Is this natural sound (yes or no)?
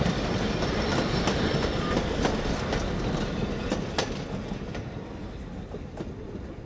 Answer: yes